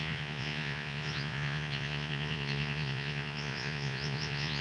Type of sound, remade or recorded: remade